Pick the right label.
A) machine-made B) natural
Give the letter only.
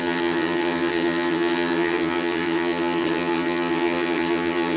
A